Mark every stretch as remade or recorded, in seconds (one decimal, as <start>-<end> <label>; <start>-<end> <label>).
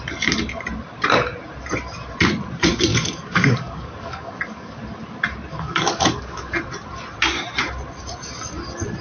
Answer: 0.0-2.9 recorded; 2.9-4.8 remade; 4.8-5.5 recorded; 5.5-6.6 remade; 6.6-9.0 recorded